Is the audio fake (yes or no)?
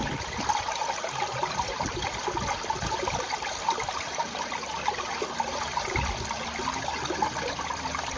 no